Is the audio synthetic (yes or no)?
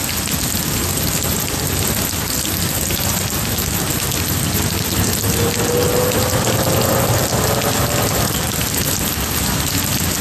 no